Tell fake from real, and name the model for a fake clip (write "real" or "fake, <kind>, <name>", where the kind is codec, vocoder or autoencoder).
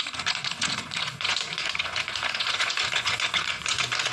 fake, vocoder, Vocos